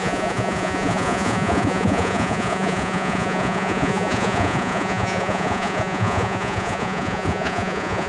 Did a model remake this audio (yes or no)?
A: yes